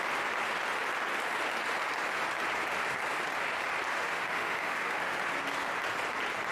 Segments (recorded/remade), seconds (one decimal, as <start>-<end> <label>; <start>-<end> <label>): 0.0-3.9 recorded; 3.9-5.2 remade; 5.2-6.5 recorded